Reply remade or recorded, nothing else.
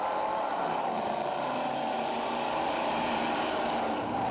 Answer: remade